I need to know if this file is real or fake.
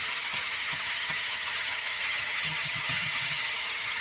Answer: fake